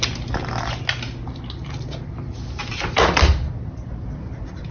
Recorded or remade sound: recorded